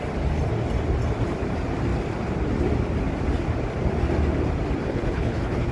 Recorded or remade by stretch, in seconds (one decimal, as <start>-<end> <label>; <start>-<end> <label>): 0.0-4.9 recorded; 4.9-5.7 remade